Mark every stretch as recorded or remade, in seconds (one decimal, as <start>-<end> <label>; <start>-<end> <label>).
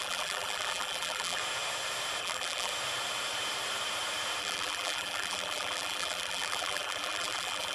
0.0-1.4 remade; 1.4-2.2 recorded; 2.2-2.7 remade; 2.7-4.4 recorded; 4.4-7.7 remade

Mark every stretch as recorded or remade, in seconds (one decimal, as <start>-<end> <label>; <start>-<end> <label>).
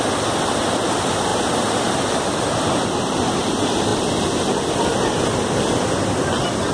0.0-1.3 recorded; 1.3-3.4 remade; 3.4-6.7 recorded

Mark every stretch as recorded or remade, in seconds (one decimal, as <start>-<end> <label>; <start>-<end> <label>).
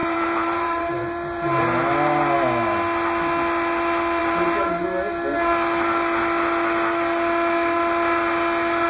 0.0-1.6 remade; 1.6-4.2 recorded; 4.2-4.8 remade; 4.8-8.9 recorded